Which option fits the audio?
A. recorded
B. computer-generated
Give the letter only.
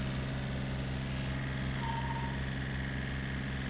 A